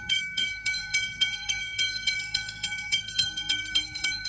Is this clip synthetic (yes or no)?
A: yes